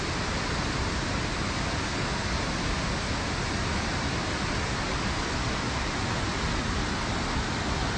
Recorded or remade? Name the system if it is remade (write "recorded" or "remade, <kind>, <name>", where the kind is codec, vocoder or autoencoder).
recorded